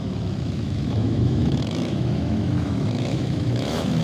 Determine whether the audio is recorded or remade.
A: remade